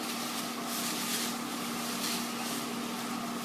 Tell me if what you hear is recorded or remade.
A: recorded